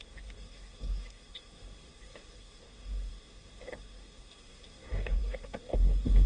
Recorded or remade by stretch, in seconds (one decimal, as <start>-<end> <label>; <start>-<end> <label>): 0.0-6.3 remade